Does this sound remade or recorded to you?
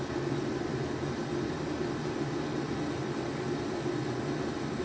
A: recorded